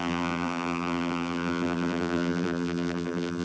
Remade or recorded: remade